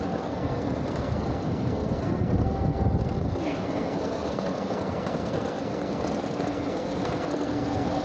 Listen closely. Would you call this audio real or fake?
fake